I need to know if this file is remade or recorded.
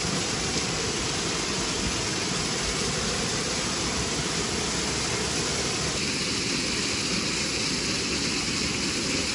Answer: recorded